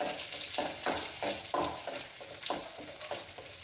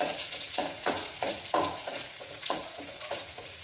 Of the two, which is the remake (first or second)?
second